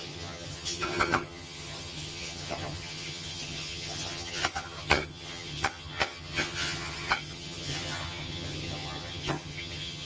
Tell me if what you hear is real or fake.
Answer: fake